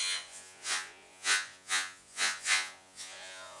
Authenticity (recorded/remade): remade